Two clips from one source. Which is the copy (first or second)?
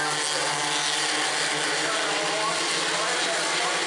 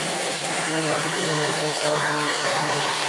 second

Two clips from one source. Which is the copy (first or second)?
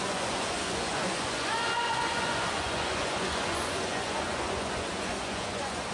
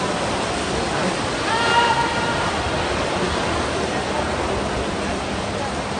first